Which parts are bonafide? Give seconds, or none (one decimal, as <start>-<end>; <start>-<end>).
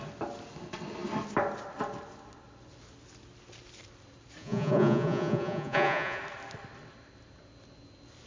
0.0-4.4; 6.2-8.3